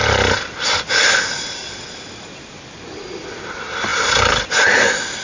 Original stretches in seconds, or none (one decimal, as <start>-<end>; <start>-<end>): 0.0-5.2

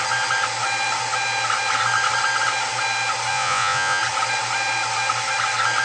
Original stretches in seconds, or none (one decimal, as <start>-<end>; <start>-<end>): 0.0-3.3; 4.0-5.8

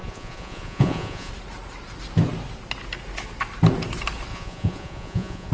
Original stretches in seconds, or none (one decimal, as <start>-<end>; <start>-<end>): 1.3-4.3

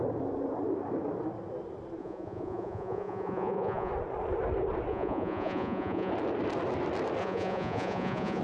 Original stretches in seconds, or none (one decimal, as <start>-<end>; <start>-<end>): 0.0-2.0; 3.9-4.9; 6.1-7.2